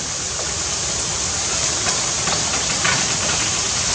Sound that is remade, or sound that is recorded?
recorded